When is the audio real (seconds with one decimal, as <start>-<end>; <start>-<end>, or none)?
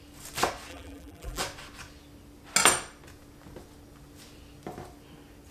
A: 0.0-0.7; 1.4-5.5